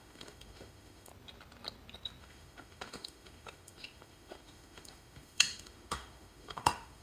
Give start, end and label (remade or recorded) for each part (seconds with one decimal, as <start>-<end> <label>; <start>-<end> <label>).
0.0-1.1 remade; 1.1-2.2 recorded; 2.2-7.0 remade

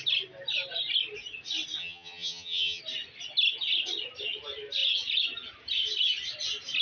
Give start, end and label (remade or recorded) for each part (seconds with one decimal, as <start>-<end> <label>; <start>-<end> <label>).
0.0-1.8 recorded; 1.8-2.8 remade; 2.8-6.8 recorded

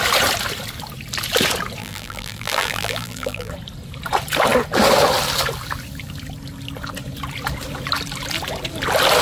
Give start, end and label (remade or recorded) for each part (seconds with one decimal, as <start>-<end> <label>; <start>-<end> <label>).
0.0-1.8 recorded; 1.8-3.5 remade; 3.5-9.2 recorded

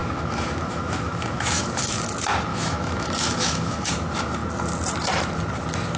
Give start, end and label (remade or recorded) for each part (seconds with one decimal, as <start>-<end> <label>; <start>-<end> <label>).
0.0-2.0 remade; 2.0-2.5 recorded; 2.5-3.9 remade; 3.9-6.0 recorded

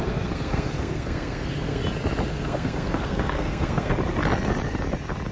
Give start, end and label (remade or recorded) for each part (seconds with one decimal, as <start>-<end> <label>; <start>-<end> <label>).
0.0-1.8 remade; 1.8-2.3 recorded; 2.3-3.9 remade; 3.9-5.3 recorded

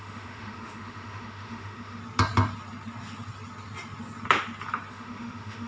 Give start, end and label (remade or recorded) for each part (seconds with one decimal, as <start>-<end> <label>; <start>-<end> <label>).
0.0-2.0 remade; 2.0-4.9 recorded; 4.9-5.7 remade

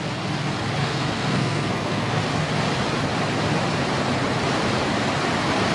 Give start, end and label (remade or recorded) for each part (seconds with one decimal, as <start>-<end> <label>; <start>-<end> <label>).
0.0-0.8 recorded; 0.8-2.2 remade; 2.2-5.7 recorded

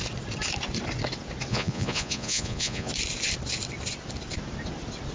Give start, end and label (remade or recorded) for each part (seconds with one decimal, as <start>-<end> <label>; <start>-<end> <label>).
0.0-1.5 recorded; 1.5-2.9 remade; 2.9-5.1 recorded